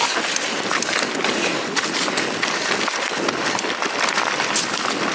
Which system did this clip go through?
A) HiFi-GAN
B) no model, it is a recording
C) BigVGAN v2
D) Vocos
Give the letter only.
B